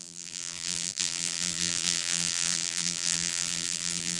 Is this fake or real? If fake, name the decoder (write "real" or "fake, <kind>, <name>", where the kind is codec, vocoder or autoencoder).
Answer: fake, vocoder, BigVGAN v2